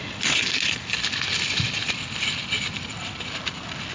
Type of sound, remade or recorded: recorded